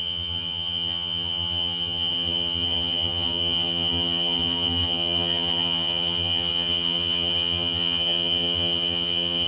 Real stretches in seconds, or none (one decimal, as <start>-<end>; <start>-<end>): none